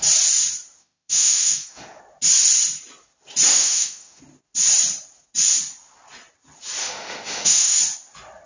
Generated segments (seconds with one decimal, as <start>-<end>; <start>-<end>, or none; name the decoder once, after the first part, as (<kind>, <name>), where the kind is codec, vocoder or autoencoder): 0.8-2.0 (autoencoder, DAC-VAE); 3.5-4.2; 6.8-7.8